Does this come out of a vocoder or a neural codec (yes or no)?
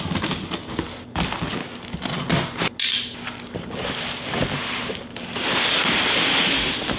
no